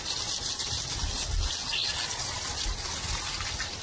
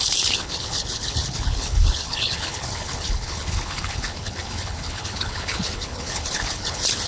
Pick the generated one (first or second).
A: second